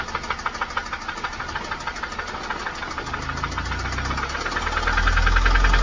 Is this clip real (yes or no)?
yes